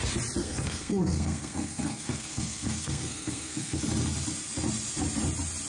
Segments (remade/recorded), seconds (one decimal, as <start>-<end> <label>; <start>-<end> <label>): 0.0-0.4 recorded; 0.4-3.8 remade; 3.8-5.7 recorded